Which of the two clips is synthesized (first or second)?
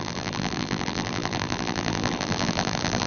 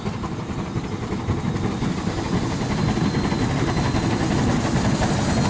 first